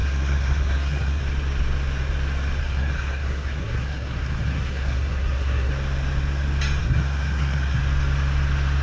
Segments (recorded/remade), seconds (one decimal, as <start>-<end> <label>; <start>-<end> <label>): 0.0-1.2 remade; 1.2-2.6 recorded; 2.6-5.7 remade; 5.7-6.8 recorded; 6.8-7.8 remade; 7.8-8.8 recorded